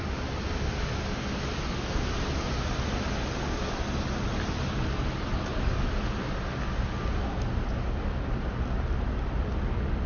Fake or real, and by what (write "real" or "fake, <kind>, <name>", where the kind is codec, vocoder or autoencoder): real